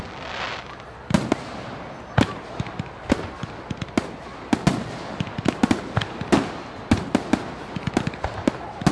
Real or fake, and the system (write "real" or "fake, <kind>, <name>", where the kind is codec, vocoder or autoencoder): real